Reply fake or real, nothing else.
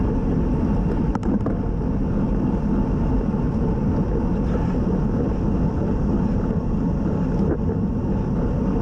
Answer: real